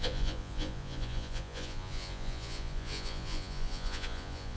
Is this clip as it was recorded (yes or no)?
no